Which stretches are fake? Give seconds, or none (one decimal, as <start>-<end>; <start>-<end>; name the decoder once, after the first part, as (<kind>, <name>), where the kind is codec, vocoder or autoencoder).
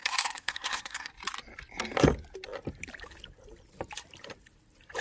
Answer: 0.0-1.1 (codec, SNAC)